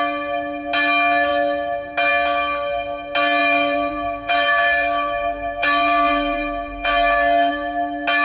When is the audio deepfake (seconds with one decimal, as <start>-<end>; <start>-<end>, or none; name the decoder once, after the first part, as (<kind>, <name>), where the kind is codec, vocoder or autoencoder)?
3.4-7.5 (vocoder, BigVGAN v2)